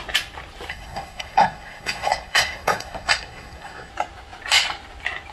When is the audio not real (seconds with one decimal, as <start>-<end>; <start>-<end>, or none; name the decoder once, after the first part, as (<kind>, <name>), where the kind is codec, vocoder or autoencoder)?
0.7-3.9 (codec, SNAC)